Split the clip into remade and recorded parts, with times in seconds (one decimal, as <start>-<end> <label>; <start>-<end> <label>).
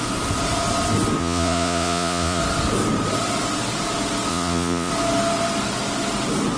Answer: 0.0-1.2 recorded; 1.2-2.4 remade; 2.4-4.3 recorded; 4.3-4.9 remade; 4.9-6.6 recorded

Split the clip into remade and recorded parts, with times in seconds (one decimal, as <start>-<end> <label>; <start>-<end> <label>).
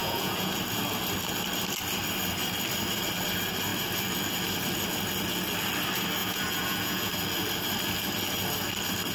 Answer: 0.0-0.6 remade; 0.6-6.2 recorded; 6.2-7.1 remade; 7.1-9.1 recorded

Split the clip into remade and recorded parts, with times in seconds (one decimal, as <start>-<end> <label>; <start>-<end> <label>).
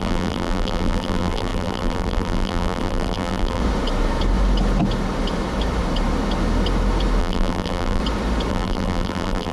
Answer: 0.0-3.6 remade; 3.6-7.2 recorded; 7.2-8.0 remade; 8.0-8.5 recorded; 8.5-9.5 remade